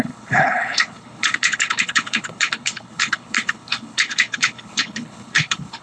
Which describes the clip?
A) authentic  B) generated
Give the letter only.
B